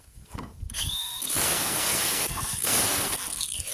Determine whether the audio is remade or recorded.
remade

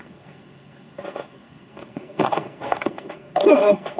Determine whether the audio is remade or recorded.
remade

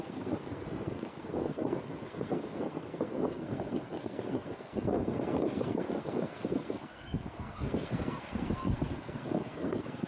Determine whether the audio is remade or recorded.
remade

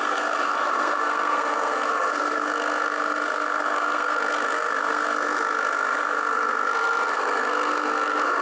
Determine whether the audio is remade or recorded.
remade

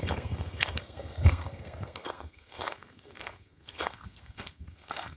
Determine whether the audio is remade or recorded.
remade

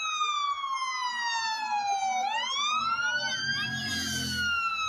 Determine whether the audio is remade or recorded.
recorded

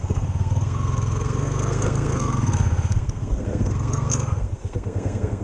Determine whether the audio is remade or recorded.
remade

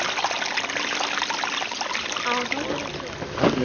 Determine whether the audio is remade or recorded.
recorded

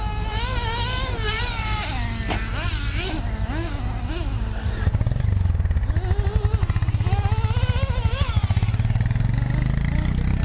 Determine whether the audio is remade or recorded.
recorded